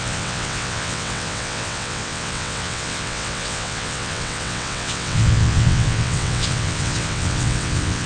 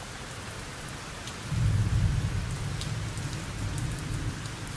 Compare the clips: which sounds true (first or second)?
second